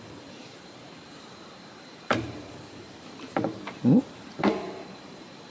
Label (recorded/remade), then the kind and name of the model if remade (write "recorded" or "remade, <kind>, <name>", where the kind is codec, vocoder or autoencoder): remade, vocoder, BigVGAN v2